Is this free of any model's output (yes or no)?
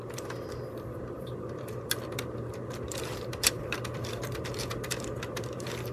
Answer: no